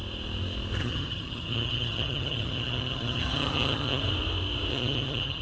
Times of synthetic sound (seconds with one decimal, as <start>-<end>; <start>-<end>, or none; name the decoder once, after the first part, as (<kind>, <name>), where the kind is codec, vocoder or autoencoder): 0.8-4.0 (vocoder, HiFi-GAN); 4.7-5.4